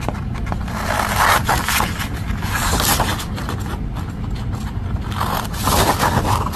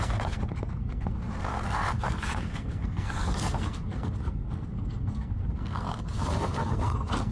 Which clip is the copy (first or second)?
second